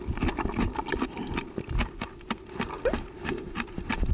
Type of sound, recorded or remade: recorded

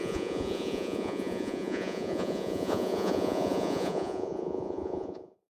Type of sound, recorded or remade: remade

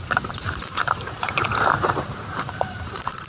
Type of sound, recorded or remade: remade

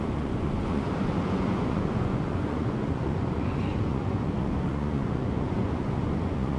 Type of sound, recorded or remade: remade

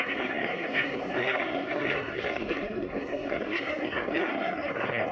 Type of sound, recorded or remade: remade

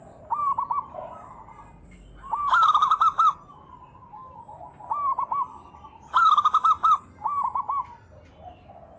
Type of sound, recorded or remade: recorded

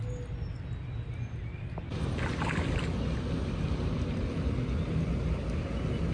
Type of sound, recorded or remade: recorded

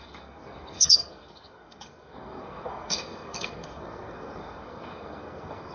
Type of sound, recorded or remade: remade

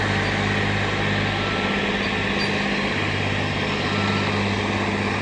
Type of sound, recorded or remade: recorded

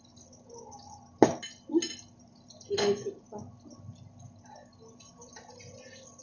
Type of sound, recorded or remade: recorded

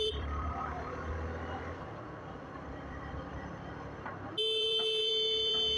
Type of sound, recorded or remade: remade